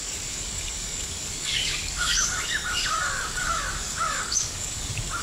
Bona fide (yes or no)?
no